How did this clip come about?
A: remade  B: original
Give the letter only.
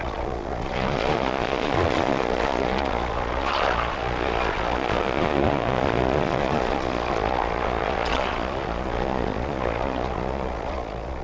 A